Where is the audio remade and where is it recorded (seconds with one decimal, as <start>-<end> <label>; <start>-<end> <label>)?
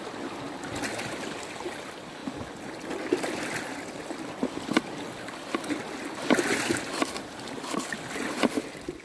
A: 0.0-9.0 recorded